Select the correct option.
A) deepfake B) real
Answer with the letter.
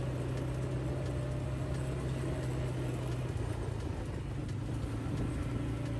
B